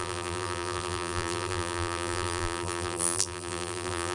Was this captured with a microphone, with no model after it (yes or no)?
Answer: no